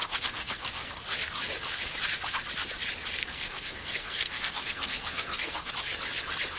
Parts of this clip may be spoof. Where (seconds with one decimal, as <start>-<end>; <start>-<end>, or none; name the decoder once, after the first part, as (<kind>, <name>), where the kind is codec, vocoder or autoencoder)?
0.0-1.0 (codec, SNAC); 3.2-5.7